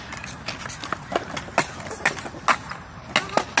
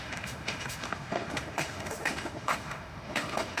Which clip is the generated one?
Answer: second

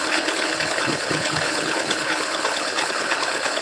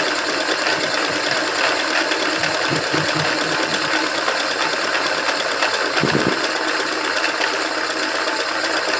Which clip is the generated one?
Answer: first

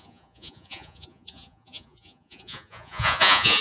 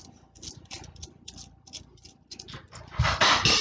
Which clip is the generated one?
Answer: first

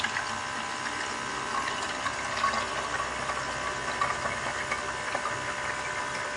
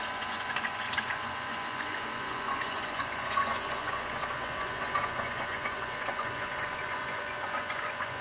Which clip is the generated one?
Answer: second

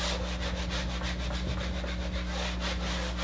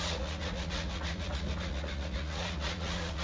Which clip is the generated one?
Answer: second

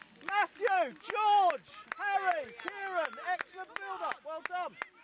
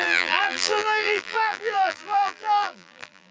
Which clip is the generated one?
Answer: second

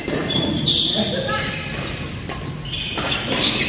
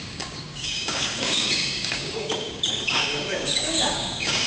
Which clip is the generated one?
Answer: second